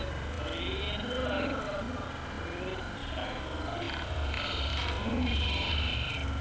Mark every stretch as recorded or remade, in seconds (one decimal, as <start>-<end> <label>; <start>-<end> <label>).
0.0-4.7 recorded; 4.7-5.7 remade; 5.7-6.4 recorded